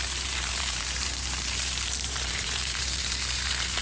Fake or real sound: fake